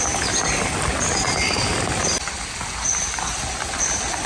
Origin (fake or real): real